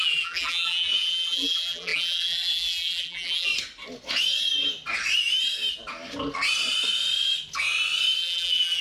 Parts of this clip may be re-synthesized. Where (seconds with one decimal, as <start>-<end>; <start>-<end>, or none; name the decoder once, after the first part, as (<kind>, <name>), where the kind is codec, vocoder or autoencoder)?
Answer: 0.0-3.5 (vocoder, BigVGAN v2); 8.2-8.8